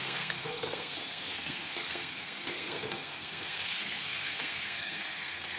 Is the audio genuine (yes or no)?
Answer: no